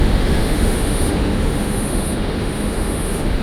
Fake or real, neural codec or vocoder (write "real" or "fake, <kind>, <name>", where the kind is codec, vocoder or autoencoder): fake, autoencoder, DAC-VAE